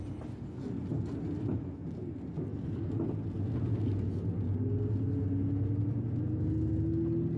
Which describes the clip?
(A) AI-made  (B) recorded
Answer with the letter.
B